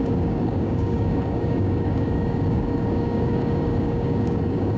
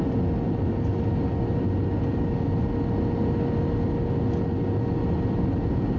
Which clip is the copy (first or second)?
first